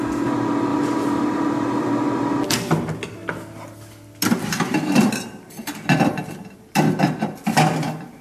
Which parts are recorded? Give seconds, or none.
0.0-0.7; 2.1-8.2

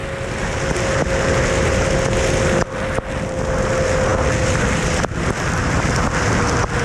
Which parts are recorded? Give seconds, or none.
0.0-6.8

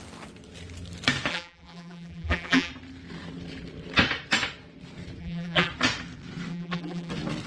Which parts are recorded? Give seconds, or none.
0.0-1.3; 2.7-5.2; 5.7-6.5; 7.1-7.5

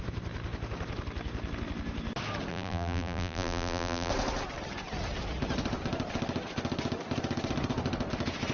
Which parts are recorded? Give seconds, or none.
0.0-2.5; 4.1-8.5

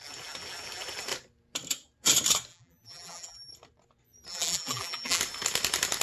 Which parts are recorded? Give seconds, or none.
0.0-2.5; 3.5-4.3; 5.2-6.0

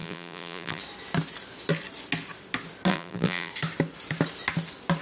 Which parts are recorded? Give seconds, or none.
0.8-2.9; 3.5-5.0

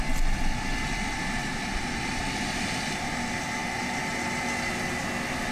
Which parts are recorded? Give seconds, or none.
0.0-1.4; 2.2-5.5

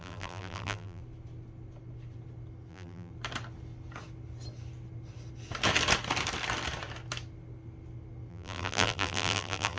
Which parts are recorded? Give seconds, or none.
1.0-2.7; 3.1-8.3